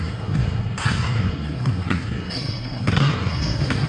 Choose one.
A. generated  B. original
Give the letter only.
A